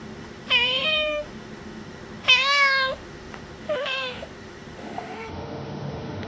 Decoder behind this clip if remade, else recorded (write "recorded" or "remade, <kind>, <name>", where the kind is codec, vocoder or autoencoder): remade, autoencoder, DAC-VAE